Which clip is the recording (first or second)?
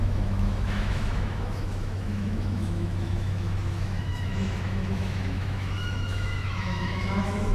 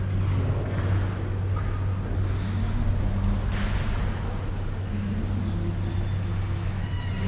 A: second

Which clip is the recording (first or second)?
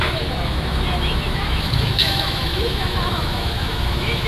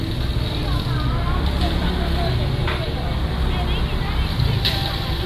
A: second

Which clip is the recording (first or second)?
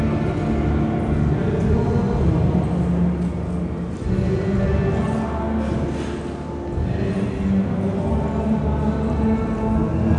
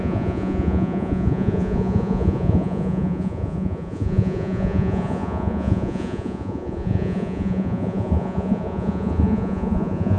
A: first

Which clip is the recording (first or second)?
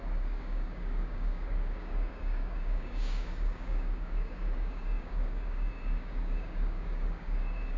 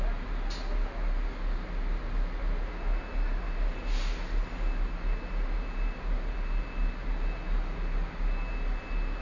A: second